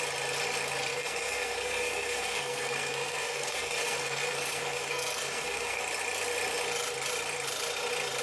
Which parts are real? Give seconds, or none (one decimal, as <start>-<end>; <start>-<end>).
0.0-0.9; 5.8-8.2